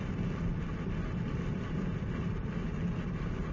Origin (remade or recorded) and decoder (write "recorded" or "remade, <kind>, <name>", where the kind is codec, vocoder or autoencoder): recorded